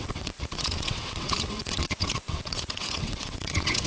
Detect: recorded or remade remade